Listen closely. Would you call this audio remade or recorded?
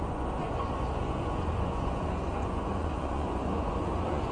remade